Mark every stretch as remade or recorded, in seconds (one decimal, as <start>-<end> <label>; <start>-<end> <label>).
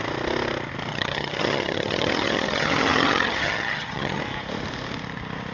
0.0-0.9 recorded; 0.9-4.2 remade; 4.2-5.5 recorded